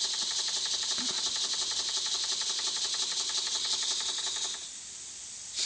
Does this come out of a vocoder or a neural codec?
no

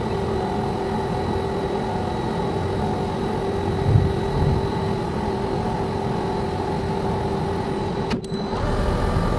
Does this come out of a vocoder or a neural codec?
no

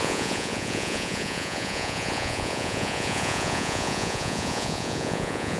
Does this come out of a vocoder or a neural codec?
yes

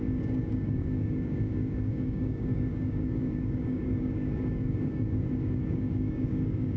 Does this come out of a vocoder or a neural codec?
yes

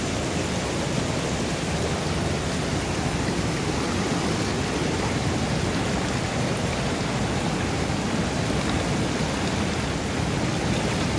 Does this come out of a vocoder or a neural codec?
no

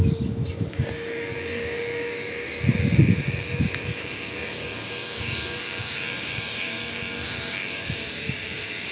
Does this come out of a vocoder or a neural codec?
yes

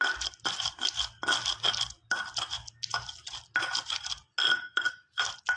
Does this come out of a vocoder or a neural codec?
no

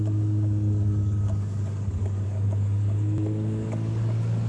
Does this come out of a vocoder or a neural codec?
yes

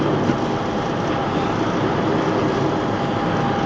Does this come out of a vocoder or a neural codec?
no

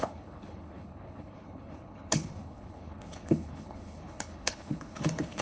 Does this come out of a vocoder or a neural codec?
yes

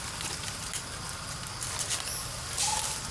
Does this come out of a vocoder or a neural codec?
no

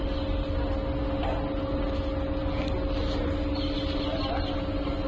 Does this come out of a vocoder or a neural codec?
no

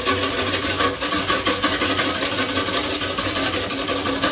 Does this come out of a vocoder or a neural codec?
no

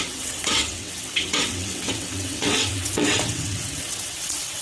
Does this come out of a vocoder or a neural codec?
yes